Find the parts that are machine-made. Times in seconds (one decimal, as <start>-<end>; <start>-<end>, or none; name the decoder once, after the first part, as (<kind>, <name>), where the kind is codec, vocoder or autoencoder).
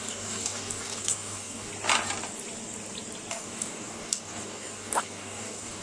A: 0.0-1.7 (codec, DAC); 3.3-5.8